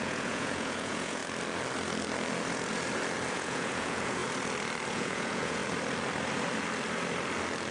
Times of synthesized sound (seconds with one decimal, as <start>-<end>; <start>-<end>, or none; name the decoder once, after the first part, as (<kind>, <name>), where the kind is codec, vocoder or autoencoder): 0.0-1.2 (vocoder, Vocos); 3.3-4.2; 4.9-5.6